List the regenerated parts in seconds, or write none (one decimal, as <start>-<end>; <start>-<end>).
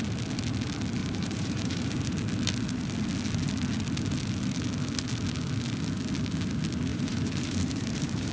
1.0-2.1; 6.9-8.3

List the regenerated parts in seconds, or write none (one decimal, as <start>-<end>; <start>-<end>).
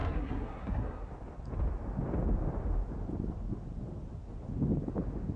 0.0-1.1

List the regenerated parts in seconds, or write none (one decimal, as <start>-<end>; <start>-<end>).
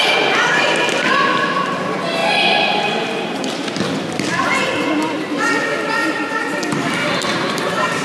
6.0-6.6; 7.3-8.0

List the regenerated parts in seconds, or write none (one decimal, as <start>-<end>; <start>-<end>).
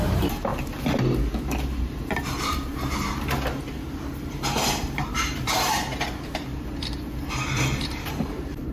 0.0-0.5; 1.7-6.5; 7.3-8.7